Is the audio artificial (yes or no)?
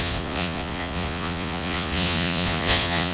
yes